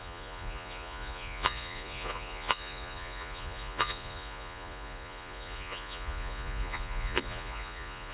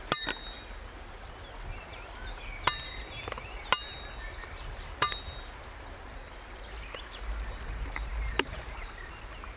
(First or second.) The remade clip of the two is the first